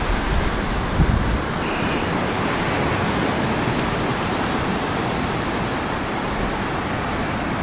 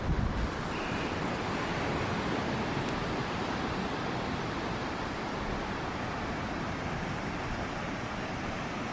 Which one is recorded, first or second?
first